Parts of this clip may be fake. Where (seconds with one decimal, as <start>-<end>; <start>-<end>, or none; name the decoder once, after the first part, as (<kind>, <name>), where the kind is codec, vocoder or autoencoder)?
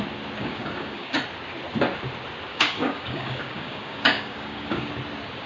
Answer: 0.4-1.2 (codec, DAC); 2.5-4.9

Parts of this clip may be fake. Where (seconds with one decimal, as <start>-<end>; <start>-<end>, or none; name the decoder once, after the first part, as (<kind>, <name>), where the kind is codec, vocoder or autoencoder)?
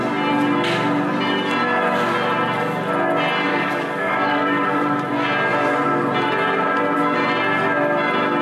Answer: 3.5-5.1 (codec, DAC)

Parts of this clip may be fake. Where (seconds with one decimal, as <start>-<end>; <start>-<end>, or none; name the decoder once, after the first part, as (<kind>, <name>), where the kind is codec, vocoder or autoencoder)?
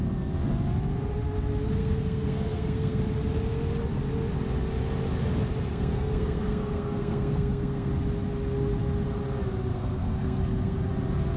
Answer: 1.8-3.0 (codec, SNAC); 5.7-7.9; 9.7-10.9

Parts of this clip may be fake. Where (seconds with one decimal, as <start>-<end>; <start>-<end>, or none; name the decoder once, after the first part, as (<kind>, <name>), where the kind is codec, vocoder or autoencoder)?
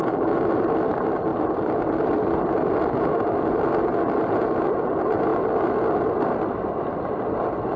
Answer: 1.3-3.6 (vocoder, BigVGAN v2)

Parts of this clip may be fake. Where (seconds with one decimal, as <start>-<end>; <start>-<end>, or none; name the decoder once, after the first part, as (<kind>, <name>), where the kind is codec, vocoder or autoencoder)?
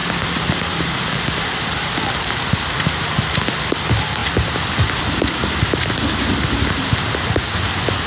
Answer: none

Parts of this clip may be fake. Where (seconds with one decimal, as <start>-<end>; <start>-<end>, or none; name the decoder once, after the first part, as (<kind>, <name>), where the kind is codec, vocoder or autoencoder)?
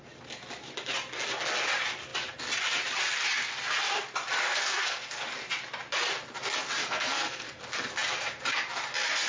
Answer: 4.5-5.1 (codec, SNAC); 6.8-7.6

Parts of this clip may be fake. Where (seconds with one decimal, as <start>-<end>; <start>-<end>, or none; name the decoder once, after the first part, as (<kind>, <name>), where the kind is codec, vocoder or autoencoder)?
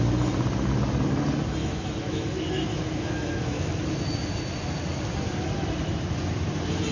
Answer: 1.6-3.9 (autoencoder, DAC-VAE)